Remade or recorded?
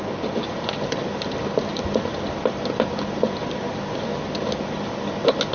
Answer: recorded